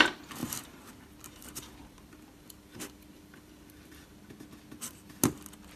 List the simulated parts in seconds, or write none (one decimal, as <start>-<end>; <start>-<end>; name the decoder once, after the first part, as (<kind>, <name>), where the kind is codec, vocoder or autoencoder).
0.4-0.9 (vocoder, BigVGAN v2); 1.8-4.2